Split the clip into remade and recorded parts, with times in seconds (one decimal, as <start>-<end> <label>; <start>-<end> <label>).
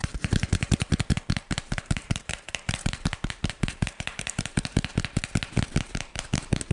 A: 0.0-4.9 remade; 4.9-5.8 recorded; 5.8-6.7 remade